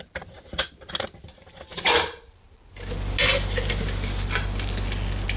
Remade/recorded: recorded